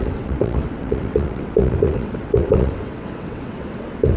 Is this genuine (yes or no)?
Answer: no